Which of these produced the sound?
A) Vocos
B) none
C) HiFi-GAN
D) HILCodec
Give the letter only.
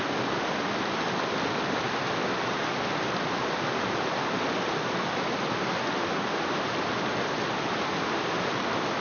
B